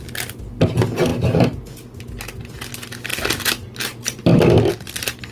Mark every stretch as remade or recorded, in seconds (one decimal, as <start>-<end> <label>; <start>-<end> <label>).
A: 0.0-5.3 recorded